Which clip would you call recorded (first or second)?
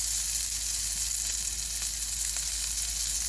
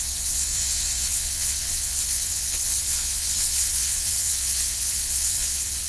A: first